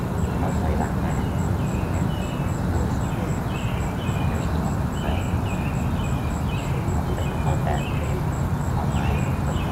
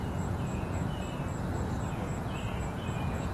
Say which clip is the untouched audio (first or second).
first